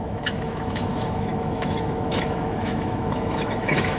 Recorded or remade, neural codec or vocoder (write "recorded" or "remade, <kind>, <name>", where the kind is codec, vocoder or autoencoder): remade, autoencoder, DAC-VAE